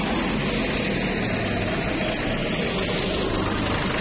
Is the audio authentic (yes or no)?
yes